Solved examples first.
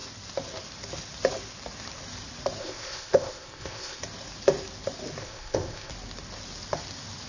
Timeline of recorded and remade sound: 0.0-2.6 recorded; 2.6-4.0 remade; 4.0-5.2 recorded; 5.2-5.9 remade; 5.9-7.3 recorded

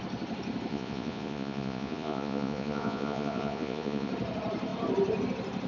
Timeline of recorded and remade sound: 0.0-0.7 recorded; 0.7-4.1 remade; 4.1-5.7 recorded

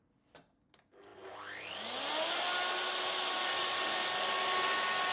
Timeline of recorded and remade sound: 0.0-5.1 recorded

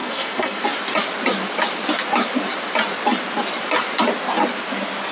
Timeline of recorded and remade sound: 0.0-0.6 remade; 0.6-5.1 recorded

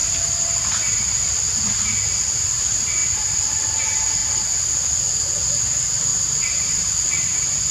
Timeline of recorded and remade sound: 0.0-0.7 remade; 0.7-7.7 recorded

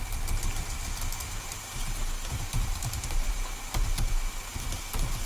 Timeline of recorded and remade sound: 0.0-1.2 recorded; 1.2-4.4 remade; 4.4-5.3 recorded